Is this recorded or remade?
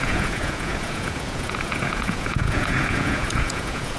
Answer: remade